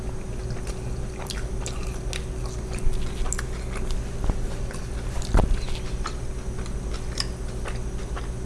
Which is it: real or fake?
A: real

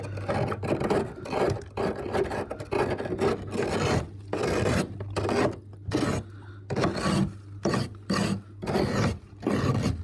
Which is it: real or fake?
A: real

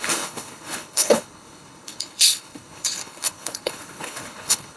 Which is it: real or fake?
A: fake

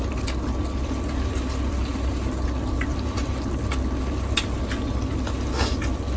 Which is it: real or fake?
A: real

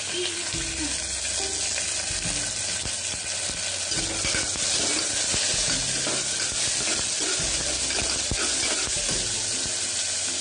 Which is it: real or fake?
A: real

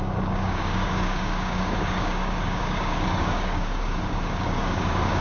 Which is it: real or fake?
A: fake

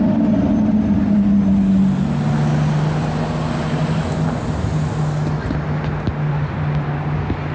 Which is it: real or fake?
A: real